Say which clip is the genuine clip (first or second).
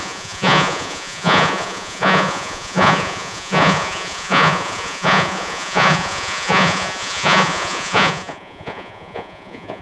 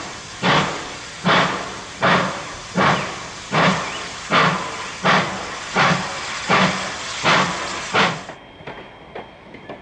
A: second